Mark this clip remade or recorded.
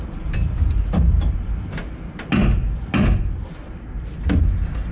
recorded